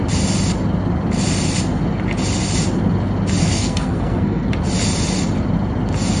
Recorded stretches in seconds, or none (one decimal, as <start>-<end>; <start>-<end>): 0.0-3.4; 4.5-6.2